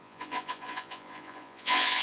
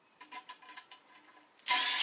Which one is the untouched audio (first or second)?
second